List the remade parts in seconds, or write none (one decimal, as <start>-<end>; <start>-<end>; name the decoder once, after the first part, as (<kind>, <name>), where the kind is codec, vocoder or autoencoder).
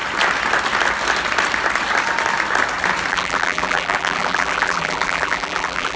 3.1-6.0 (vocoder, BigVGAN v2)